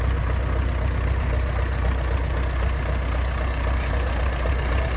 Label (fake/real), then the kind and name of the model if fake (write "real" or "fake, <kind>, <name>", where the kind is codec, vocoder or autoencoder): real